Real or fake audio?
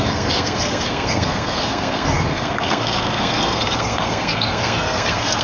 fake